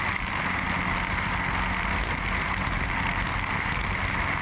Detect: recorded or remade recorded